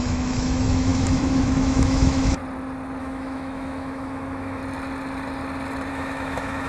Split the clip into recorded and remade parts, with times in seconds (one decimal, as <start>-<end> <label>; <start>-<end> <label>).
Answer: 0.0-2.4 remade; 2.4-3.0 recorded; 3.0-4.6 remade; 4.6-5.9 recorded; 5.9-6.7 remade